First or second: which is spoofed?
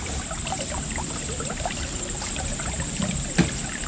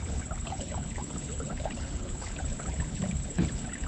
second